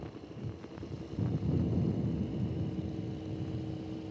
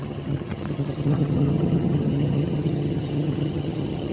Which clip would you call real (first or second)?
first